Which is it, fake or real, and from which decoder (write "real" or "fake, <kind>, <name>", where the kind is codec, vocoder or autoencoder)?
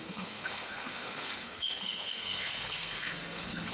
fake, codec, SNAC